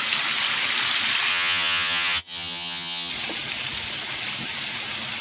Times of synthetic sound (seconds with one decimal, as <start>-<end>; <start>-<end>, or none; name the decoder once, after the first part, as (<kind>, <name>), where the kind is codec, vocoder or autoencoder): 1.3-3.1 (vocoder, HiFi-GAN)